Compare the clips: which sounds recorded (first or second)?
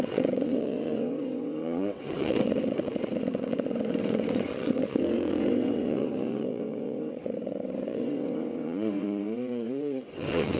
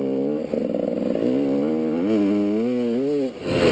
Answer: second